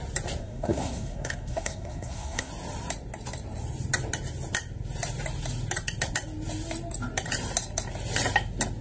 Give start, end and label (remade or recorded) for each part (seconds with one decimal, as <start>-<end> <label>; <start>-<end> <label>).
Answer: 0.0-0.4 recorded; 0.4-2.5 remade; 2.5-8.8 recorded